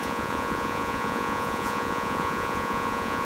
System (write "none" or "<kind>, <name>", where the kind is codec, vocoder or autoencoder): vocoder, Vocos